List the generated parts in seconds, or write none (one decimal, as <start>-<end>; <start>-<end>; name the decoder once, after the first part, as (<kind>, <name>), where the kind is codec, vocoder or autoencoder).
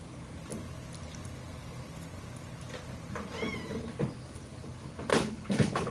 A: 5.1-5.9 (codec, HILCodec)